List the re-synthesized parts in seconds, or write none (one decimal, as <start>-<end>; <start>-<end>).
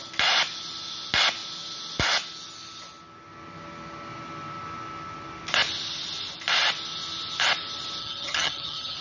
8.0-9.0